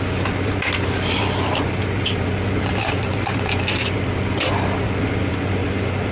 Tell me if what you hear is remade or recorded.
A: recorded